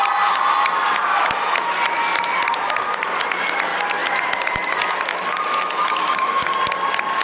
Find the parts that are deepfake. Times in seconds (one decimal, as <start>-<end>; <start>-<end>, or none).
5.1-6.5